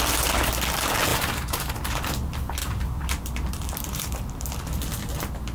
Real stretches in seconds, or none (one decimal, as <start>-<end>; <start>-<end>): 0.0-1.1; 1.7-2.6; 4.5-5.5